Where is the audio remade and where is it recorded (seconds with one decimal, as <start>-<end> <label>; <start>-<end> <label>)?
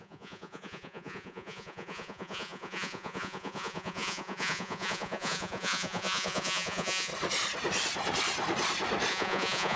0.0-7.1 remade; 7.1-9.1 recorded; 9.1-9.8 remade